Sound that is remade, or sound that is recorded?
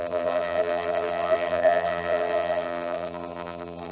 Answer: remade